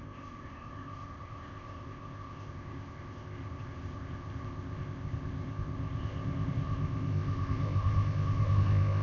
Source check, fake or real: fake